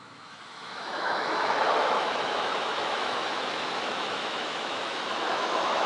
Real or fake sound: fake